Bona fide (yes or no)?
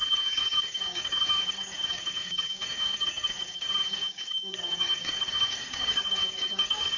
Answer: no